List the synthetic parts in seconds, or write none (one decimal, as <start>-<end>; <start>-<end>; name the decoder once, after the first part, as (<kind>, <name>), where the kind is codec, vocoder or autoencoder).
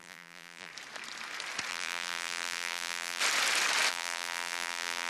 0.0-0.7 (vocoder, BigVGAN v2); 1.7-3.2; 3.9-5.1